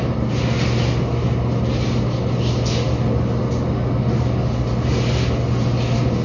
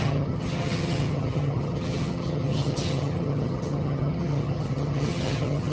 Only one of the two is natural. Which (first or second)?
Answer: first